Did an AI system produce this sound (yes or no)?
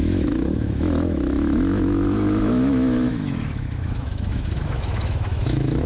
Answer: yes